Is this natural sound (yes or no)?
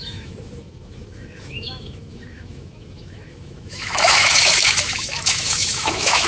no